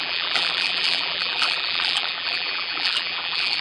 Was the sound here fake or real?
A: fake